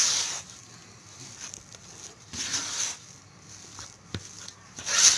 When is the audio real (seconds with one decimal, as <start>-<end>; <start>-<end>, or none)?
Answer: 0.0-5.2